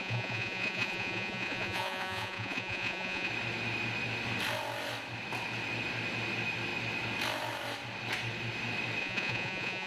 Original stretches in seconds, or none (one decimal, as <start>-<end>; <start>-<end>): 3.3-9.0